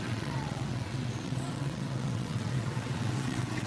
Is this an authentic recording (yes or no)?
no